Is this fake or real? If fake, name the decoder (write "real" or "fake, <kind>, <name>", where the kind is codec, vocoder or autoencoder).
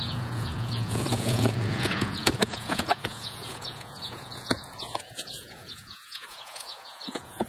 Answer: fake, vocoder, Vocos